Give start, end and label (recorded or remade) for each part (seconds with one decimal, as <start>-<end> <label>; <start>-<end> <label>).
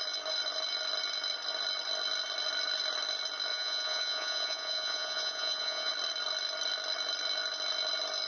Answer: 0.0-3.5 recorded; 3.5-5.9 remade; 5.9-8.3 recorded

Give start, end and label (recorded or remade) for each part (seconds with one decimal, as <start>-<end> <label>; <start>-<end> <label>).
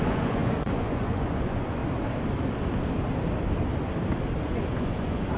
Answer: 0.0-1.8 remade; 1.8-4.5 recorded; 4.5-5.4 remade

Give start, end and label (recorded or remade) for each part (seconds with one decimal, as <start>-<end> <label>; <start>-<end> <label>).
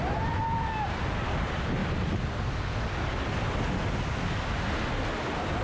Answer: 0.0-5.6 recorded